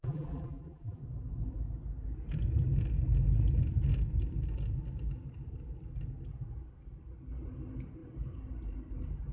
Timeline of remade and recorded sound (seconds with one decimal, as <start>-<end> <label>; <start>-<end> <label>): 0.0-1.0 remade; 1.0-9.3 recorded